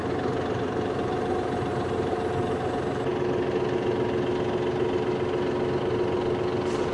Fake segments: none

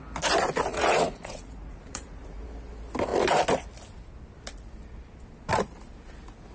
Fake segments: 0.7-2.4 (vocoder, Vocos)

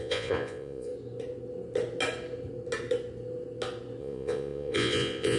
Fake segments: 0.0-0.9 (vocoder, Vocos); 4.0-5.4

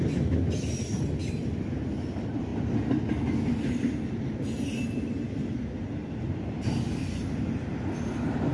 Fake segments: none